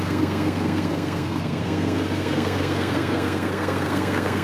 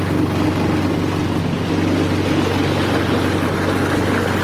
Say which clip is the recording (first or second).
second